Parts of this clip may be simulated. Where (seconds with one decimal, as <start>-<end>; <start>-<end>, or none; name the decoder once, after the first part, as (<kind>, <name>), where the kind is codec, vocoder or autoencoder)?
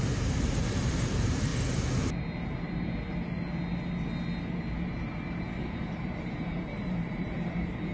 0.0-1.5 (vocoder, BigVGAN v2); 5.7-7.9